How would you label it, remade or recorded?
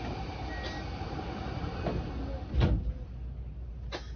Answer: recorded